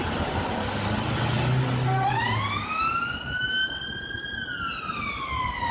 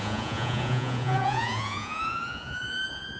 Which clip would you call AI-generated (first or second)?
second